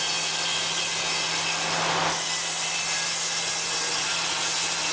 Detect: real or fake real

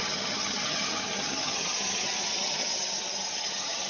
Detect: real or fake fake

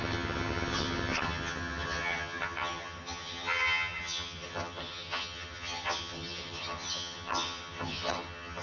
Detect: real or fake fake